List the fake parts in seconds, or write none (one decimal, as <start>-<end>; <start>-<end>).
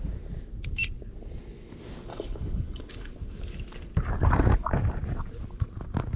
2.1-3.1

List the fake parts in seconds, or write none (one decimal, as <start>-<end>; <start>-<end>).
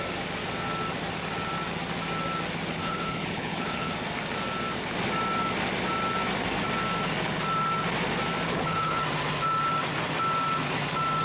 2.8-3.9; 8.5-9.0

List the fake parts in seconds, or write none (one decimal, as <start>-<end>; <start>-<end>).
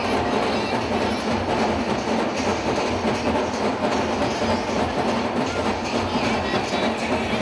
none